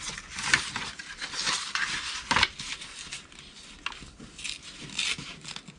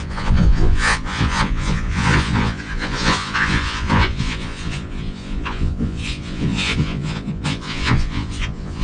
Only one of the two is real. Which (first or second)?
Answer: first